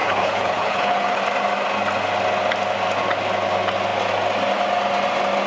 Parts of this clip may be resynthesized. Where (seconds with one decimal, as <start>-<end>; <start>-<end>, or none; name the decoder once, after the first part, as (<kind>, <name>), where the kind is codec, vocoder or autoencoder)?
0.0-1.2 (codec, HILCodec)

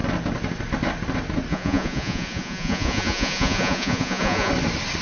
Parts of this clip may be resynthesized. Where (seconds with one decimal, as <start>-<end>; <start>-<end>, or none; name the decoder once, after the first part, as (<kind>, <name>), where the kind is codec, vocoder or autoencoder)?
1.5-4.5 (vocoder, Vocos)

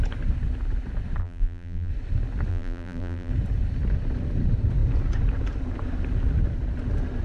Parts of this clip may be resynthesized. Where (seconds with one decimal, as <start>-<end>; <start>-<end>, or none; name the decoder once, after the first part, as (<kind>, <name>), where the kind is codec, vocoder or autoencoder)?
1.2-1.9 (vocoder, BigVGAN v2); 2.5-3.3

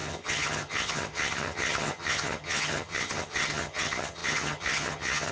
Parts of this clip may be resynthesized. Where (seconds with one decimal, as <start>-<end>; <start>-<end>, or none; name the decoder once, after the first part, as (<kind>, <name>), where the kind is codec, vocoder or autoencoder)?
0.0-5.3 (vocoder, HiFi-GAN)

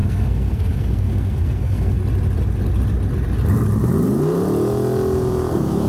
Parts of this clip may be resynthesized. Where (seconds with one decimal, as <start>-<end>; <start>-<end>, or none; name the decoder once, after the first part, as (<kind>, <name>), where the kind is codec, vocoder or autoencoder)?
0.0-2.0 (codec, SNAC); 5.5-5.9

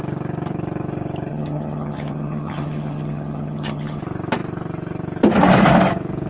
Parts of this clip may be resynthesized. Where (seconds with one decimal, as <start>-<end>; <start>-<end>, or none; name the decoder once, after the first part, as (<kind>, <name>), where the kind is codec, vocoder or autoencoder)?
1.3-4.0 (vocoder, HiFi-GAN)